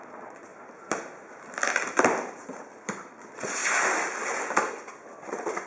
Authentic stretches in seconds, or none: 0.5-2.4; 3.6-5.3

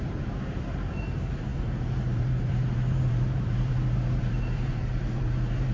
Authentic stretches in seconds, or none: none

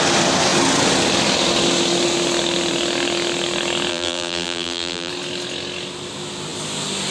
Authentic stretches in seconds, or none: 0.0-3.9; 5.1-7.1